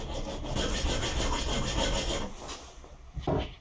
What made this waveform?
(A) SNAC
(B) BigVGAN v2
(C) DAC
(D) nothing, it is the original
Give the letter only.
D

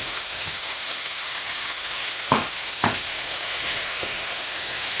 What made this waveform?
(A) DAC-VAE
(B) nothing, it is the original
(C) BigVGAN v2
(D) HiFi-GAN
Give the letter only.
A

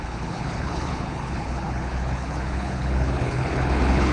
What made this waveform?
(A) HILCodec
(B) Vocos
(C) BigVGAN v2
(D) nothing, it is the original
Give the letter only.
A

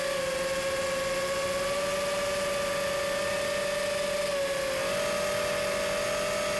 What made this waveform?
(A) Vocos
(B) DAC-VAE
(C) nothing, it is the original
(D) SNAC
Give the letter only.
C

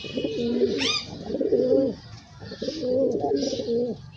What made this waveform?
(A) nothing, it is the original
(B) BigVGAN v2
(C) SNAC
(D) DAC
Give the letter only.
A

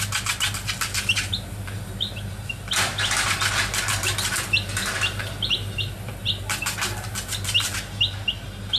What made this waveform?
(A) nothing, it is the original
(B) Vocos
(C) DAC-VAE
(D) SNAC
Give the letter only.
A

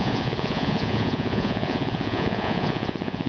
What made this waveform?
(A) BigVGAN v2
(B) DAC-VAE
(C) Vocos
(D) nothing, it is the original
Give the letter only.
C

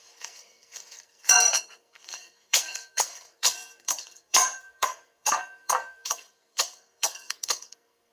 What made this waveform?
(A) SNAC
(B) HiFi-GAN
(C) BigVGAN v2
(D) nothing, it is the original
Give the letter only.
A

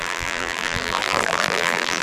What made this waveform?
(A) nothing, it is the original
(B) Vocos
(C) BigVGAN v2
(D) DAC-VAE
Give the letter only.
C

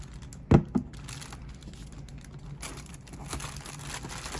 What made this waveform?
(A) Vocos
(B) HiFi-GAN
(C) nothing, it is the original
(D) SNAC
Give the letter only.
C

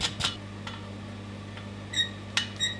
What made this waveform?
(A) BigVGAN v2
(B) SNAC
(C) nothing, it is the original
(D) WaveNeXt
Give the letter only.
C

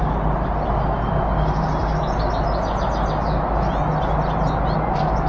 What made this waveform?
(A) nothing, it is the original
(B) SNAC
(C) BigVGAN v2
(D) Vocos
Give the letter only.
A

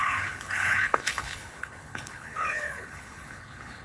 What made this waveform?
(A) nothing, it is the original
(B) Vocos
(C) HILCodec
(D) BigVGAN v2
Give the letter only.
C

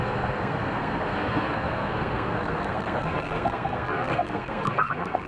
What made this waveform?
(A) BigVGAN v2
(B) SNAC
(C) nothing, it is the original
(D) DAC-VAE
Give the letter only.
B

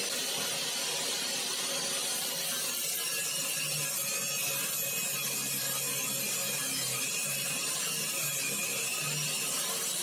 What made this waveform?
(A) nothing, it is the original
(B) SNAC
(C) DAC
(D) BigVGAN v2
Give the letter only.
A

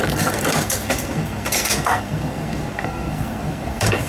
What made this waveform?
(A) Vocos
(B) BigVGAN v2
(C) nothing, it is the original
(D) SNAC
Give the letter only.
D